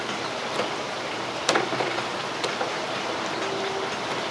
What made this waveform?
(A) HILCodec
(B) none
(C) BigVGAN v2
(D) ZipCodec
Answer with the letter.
B